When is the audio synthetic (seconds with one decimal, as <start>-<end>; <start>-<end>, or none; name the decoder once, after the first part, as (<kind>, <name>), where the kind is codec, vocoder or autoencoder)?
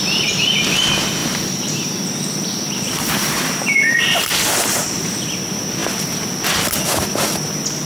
1.2-5.2 (vocoder, BigVGAN v2)